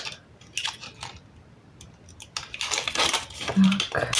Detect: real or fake real